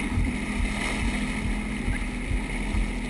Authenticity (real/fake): real